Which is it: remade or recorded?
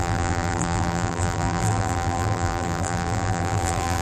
remade